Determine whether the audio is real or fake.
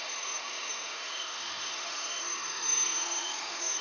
fake